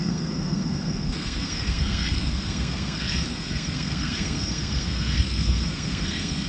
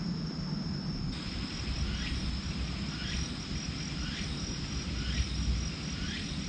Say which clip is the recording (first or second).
second